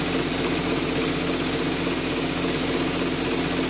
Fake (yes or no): no